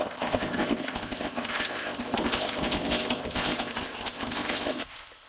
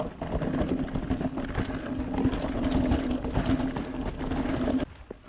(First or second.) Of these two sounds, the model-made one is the first